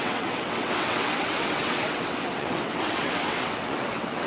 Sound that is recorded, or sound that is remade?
remade